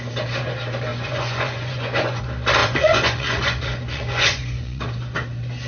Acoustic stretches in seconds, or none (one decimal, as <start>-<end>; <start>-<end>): 0.0-0.9; 2.2-2.6; 4.8-5.7